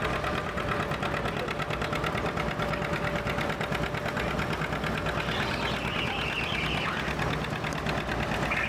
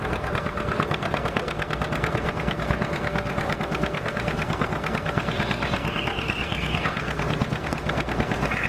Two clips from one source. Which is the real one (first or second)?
first